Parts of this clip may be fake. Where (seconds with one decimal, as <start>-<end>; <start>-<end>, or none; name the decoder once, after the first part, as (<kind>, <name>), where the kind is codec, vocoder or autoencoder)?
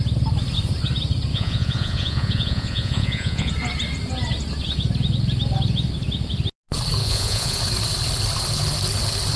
1.3-3.5 (vocoder, Vocos); 7.0-7.6